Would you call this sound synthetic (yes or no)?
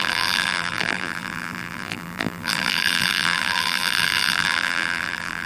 yes